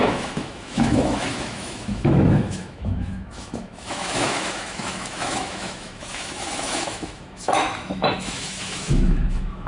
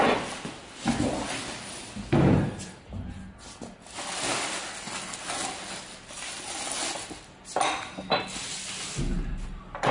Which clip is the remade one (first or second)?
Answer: first